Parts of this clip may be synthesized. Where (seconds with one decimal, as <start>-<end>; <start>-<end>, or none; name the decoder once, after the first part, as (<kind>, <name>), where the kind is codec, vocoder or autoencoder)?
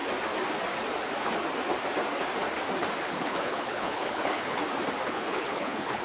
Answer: 3.0-4.6 (codec, HILCodec); 5.1-6.0